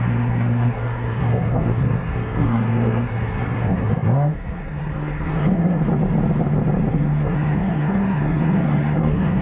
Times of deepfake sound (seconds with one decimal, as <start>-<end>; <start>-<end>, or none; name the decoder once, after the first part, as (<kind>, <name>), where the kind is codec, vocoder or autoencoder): 0.0-5.8 (codec, SNAC); 6.9-9.4